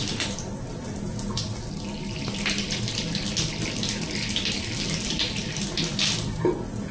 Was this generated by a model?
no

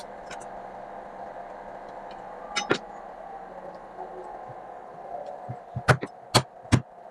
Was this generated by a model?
no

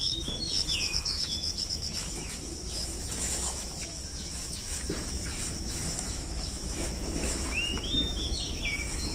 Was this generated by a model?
yes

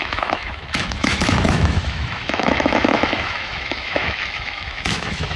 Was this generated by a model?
yes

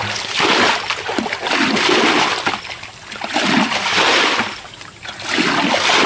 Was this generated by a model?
no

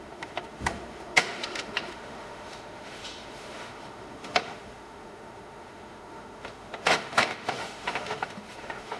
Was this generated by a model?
yes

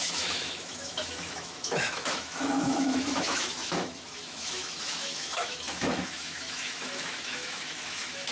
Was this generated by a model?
yes